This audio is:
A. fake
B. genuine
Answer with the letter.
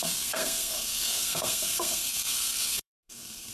A